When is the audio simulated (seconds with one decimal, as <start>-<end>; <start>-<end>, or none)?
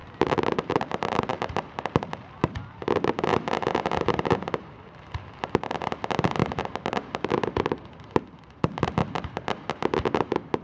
0.0-1.6; 6.4-7.3